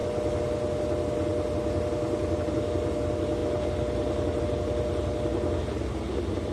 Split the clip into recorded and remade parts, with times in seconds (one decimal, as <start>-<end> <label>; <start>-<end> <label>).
0.0-6.5 recorded